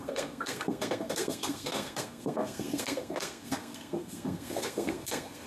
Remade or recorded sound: remade